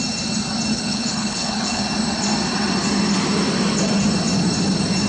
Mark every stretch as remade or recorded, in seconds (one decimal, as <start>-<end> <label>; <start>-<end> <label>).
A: 0.0-0.7 recorded; 0.7-1.8 remade; 1.8-5.1 recorded